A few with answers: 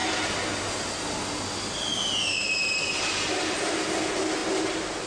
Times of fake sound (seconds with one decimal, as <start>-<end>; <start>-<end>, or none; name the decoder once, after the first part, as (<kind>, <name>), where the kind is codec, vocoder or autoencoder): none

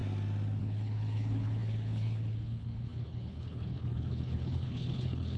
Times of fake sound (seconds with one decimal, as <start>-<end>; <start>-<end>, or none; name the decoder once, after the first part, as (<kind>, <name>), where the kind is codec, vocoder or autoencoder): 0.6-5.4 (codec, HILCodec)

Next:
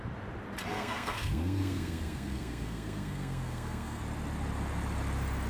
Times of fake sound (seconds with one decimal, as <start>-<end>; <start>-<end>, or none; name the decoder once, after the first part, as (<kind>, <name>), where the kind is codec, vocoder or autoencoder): 0.7-4.0 (codec, SNAC)

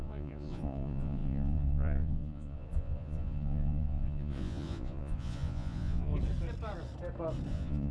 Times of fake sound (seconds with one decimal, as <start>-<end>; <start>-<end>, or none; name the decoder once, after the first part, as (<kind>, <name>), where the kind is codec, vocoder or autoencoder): 0.0-6.1 (vocoder, Vocos); 7.5-7.9

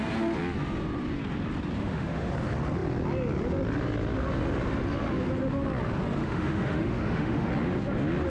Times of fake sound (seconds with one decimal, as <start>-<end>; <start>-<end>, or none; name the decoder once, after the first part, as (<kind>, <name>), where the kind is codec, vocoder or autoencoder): 1.8-2.3 (autoencoder, DAC-VAE); 6.2-7.5

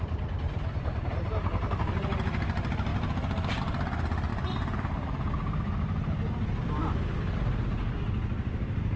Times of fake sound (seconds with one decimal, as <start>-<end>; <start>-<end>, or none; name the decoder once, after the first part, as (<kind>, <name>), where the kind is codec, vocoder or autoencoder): none